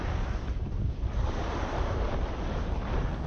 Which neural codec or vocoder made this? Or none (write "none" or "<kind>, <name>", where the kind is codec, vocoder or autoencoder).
none